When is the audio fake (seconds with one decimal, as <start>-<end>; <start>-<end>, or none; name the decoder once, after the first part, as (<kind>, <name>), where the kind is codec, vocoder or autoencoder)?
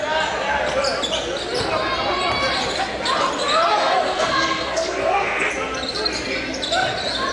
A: 3.7-5.5 (codec, SNAC)